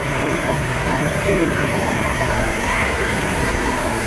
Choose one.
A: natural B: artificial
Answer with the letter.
B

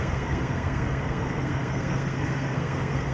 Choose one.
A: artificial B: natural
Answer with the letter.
A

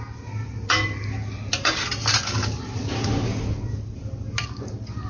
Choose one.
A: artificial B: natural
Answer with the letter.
B